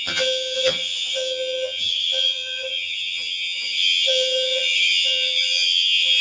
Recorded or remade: remade